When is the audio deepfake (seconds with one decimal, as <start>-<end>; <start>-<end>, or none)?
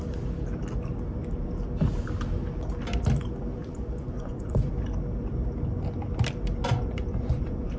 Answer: 3.6-4.7; 6.6-7.8